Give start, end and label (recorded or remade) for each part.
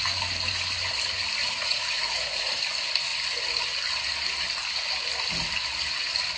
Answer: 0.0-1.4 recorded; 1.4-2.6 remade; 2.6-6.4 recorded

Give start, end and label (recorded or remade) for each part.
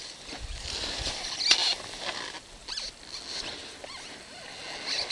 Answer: 0.0-5.1 recorded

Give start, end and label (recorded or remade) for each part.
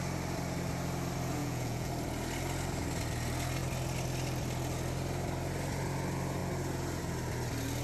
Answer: 0.0-1.4 recorded; 1.4-1.9 remade; 1.9-7.8 recorded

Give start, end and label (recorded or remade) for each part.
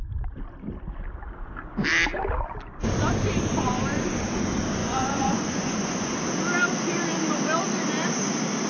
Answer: 0.0-4.8 recorded; 4.8-6.2 remade; 6.2-8.7 recorded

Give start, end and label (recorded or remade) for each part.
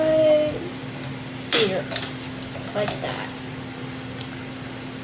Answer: 0.0-5.0 recorded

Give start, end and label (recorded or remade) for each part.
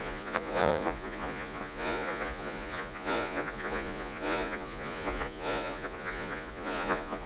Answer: 0.0-7.3 remade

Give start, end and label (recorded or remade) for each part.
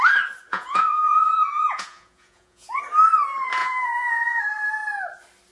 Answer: 0.0-0.5 recorded; 0.5-2.8 remade; 2.8-3.6 recorded; 3.6-4.4 remade; 4.4-5.5 recorded